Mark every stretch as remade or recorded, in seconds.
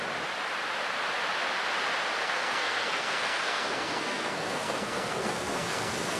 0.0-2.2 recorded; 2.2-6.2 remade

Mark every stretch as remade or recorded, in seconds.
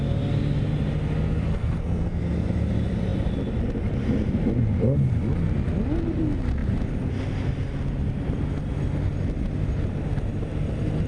0.0-1.5 recorded; 1.5-2.2 remade; 2.2-11.1 recorded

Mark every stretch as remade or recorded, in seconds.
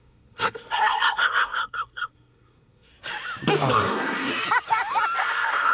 0.0-2.9 remade; 2.9-3.7 recorded; 3.7-4.3 remade; 4.3-5.2 recorded; 5.2-5.7 remade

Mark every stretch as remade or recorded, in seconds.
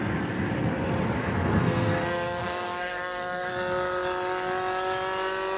0.0-1.6 recorded; 1.6-3.5 remade; 3.5-5.6 recorded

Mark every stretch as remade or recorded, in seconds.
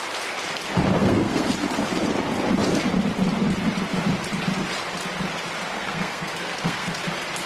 0.0-1.0 recorded; 1.0-1.5 remade; 1.5-5.7 recorded; 5.7-7.0 remade; 7.0-7.5 recorded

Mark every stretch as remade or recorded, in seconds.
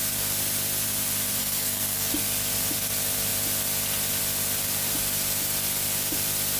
0.0-1.4 recorded; 1.4-2.1 remade; 2.1-6.6 recorded